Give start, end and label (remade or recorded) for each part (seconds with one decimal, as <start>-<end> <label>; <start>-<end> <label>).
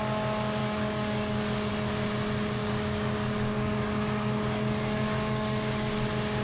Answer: 0.0-0.6 recorded; 0.6-1.7 remade; 1.7-2.6 recorded; 2.6-5.9 remade; 5.9-6.4 recorded